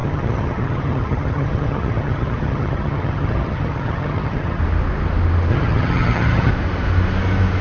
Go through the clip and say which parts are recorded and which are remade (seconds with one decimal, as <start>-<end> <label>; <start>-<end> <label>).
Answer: 0.0-4.6 remade; 4.6-5.5 recorded; 5.5-6.5 remade; 6.5-7.6 recorded